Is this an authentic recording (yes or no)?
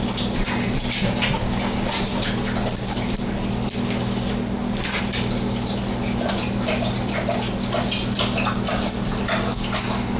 yes